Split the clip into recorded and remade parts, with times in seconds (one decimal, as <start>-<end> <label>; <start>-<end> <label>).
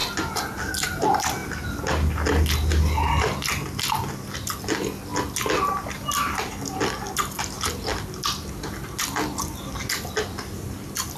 0.0-11.2 recorded